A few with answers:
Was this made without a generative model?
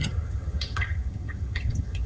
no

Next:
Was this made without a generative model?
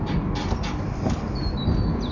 yes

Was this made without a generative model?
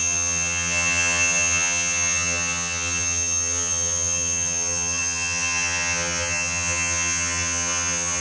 no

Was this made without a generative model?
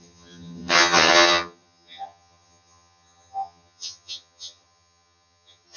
no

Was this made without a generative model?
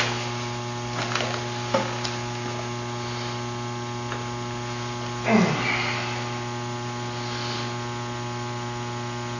yes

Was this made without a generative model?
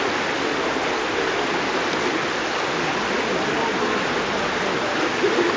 yes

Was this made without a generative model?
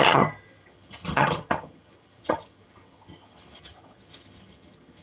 no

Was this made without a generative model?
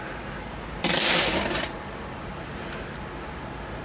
yes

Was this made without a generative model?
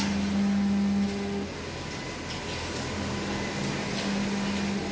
yes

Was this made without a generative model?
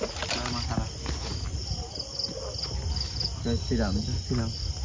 yes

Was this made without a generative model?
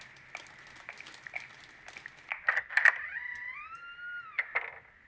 yes